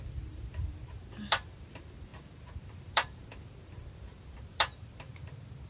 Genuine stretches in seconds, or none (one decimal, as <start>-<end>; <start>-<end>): none